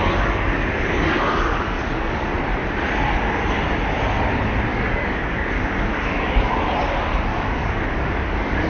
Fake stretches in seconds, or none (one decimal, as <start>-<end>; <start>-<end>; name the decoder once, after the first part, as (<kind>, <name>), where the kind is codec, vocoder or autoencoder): 0.6-2.3 (codec, DAC); 4.7-6.5; 7.3-8.7